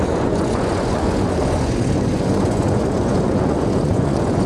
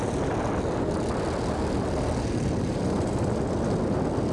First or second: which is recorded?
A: second